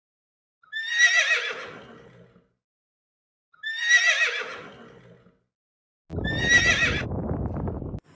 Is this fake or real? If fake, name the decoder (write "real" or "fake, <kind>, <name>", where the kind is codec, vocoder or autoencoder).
real